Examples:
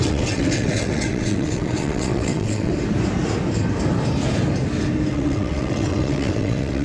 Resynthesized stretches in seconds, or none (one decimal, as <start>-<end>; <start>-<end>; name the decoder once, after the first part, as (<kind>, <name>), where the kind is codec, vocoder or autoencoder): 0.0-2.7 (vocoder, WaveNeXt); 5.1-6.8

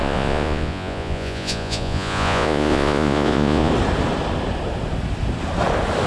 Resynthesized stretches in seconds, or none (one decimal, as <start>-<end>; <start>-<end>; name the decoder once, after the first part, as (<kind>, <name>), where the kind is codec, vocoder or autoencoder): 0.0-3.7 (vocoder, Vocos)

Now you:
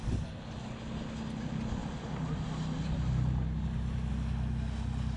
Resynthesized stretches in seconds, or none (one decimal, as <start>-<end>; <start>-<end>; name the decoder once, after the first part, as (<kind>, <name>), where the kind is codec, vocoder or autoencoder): none